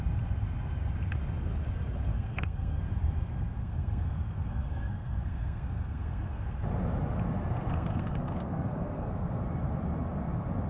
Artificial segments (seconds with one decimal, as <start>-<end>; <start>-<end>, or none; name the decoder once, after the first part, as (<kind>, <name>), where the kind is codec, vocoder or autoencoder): 2.1-2.8 (codec, SNAC); 3.6-6.6; 7.7-9.4